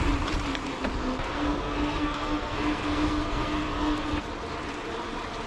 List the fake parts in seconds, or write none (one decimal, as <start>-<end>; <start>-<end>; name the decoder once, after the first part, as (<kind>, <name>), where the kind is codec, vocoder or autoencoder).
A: 1.0-4.3 (codec, SNAC)